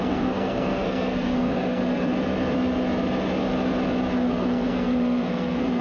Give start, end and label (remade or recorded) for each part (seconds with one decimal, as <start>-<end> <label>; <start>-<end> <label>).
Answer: 0.0-1.8 remade; 1.8-4.3 recorded; 4.3-5.8 remade